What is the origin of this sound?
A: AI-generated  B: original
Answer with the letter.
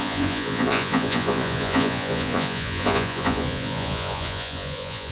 A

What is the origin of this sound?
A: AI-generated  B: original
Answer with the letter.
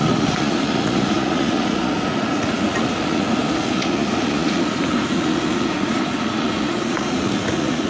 A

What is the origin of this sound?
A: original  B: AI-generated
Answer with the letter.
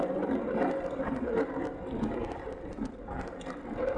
A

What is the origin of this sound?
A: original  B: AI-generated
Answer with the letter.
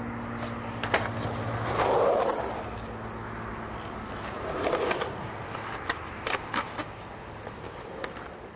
A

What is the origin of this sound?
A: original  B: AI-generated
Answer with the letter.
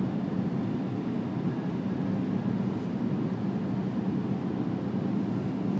A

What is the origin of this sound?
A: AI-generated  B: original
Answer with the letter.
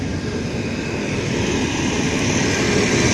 B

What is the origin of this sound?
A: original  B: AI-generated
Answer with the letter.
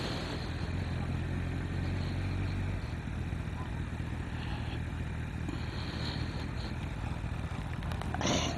A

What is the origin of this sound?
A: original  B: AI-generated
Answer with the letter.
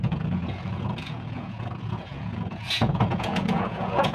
B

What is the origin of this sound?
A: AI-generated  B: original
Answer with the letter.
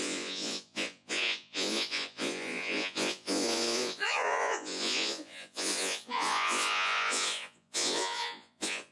A